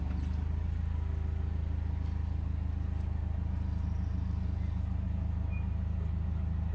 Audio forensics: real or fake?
real